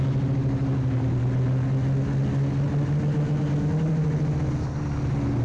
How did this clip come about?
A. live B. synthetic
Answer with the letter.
A